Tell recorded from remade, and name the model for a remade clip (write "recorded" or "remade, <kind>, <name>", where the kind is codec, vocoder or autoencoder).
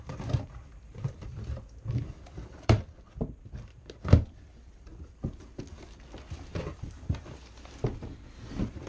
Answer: remade, vocoder, BigVGAN v2